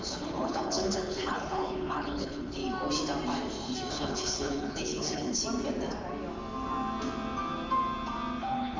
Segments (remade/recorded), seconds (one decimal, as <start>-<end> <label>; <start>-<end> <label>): 0.0-2.6 remade; 2.6-3.9 recorded; 3.9-5.4 remade; 5.4-8.4 recorded; 8.4-8.8 remade